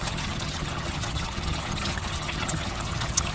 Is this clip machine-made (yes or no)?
yes